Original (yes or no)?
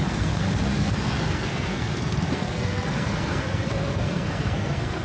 no